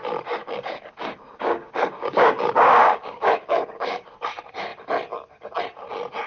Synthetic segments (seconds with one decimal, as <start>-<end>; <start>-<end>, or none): 0.4-4.2